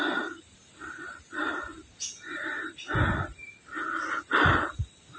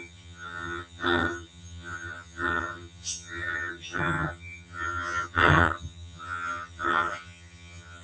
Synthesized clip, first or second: second